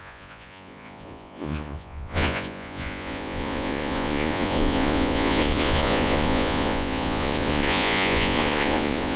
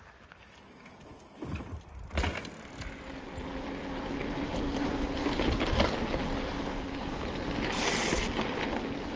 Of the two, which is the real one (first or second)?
second